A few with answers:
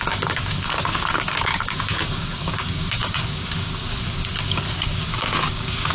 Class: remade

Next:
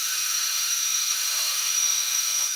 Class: remade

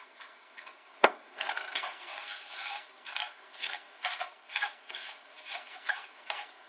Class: remade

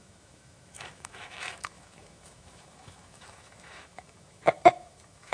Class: remade